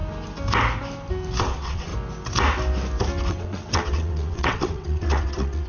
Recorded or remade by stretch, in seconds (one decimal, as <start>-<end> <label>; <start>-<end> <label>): 0.0-1.4 recorded; 1.4-1.9 remade; 1.9-3.3 recorded; 3.3-5.7 remade